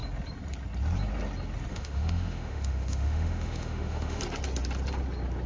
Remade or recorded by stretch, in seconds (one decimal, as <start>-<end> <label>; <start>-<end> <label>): 0.0-1.7 recorded; 1.7-4.2 remade; 4.2-5.5 recorded